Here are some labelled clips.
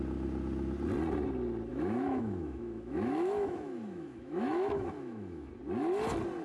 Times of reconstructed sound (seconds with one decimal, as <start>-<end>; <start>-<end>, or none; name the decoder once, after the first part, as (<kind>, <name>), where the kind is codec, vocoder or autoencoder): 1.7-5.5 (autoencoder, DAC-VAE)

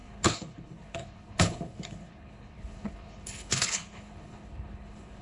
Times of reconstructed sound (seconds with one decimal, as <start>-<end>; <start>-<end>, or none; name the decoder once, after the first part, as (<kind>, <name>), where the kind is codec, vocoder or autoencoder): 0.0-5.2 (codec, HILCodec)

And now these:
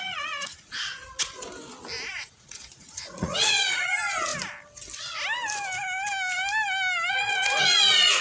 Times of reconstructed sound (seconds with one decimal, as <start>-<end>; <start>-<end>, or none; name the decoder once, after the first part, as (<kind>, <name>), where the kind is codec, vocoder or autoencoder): 0.0-1.4 (vocoder, Vocos); 2.1-4.3; 7.1-8.2

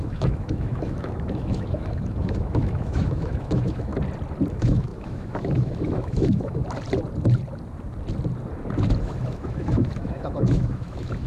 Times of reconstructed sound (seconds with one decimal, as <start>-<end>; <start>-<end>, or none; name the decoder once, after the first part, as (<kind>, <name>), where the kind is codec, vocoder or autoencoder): 0.0-3.9 (autoencoder, DAC-VAE); 4.5-6.6; 9.0-11.3

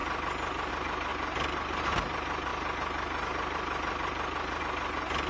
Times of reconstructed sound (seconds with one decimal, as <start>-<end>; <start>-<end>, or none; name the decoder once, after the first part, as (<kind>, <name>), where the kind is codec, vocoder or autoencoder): none

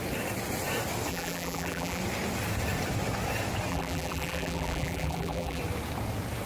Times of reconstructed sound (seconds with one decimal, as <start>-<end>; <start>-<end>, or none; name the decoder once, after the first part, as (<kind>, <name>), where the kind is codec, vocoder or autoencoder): 1.1-2.0 (vocoder, BigVGAN v2); 3.7-5.6

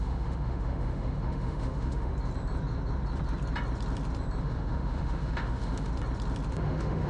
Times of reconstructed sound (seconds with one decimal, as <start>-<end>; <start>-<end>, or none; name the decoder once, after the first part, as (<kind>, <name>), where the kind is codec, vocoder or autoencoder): 0.0-2.1 (autoencoder, DAC-VAE); 4.4-5.9; 6.5-7.1

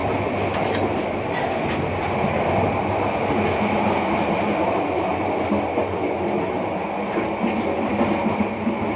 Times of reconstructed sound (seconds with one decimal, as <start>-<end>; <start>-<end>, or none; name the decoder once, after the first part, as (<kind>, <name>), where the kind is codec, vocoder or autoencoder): none